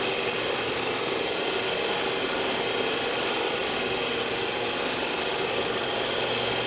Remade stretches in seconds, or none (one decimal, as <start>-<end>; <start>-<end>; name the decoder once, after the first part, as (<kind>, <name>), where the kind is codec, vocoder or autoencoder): none